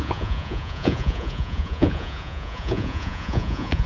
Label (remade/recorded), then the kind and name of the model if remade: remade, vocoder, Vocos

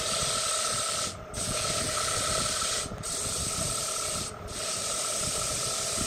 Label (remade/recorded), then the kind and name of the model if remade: recorded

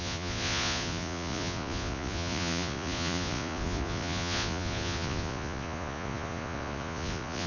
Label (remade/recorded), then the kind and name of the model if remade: remade, vocoder, Vocos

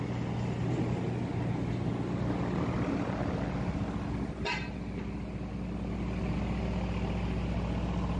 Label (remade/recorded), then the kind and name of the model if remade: recorded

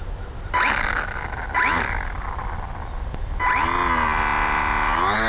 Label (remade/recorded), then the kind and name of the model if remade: recorded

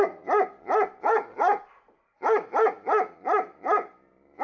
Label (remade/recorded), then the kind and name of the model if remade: recorded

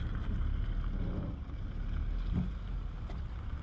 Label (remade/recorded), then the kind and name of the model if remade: recorded